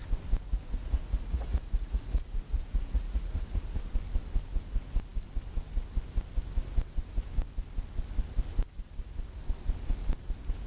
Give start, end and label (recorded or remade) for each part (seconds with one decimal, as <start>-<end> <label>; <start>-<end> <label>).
0.0-0.5 recorded; 0.5-3.9 remade; 3.9-10.7 recorded